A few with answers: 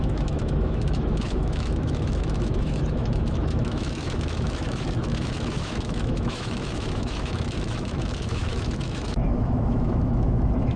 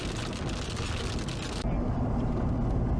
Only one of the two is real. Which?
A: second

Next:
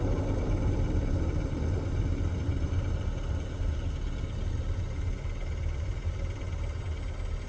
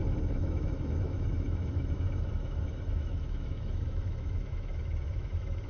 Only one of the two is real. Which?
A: first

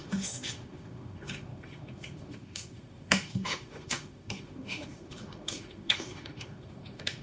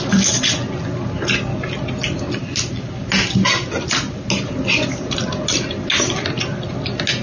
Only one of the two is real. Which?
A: second